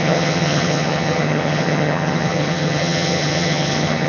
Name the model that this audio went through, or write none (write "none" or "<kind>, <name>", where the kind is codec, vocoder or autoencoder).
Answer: vocoder, HiFi-GAN